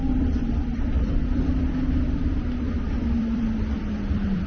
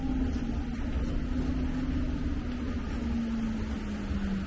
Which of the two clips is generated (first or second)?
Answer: first